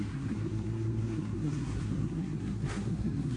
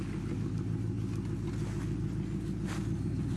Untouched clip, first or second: second